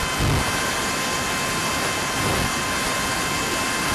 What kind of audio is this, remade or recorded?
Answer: recorded